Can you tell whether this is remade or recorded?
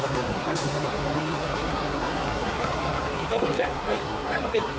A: remade